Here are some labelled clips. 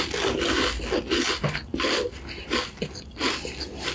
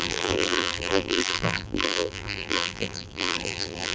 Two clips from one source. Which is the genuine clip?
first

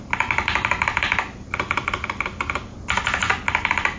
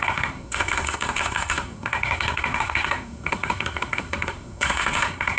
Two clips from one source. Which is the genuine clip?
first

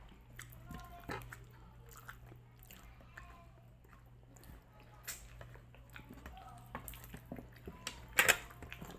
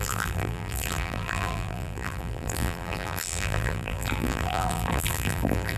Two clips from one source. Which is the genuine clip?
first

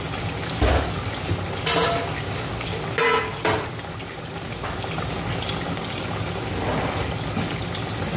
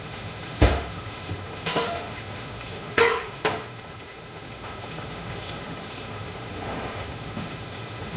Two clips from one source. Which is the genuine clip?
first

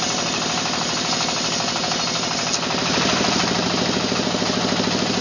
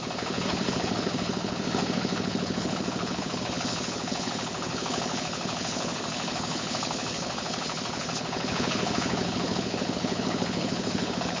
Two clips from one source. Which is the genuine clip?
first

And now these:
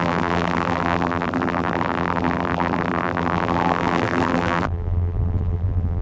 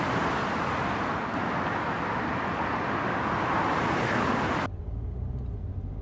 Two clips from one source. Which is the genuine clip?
second